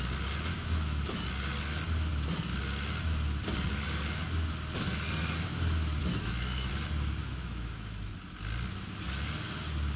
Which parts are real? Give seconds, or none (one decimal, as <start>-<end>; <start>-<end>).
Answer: 0.0-0.5; 1.2-6.0; 6.7-7.2; 8.1-10.0